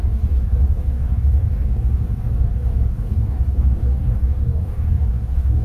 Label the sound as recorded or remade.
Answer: remade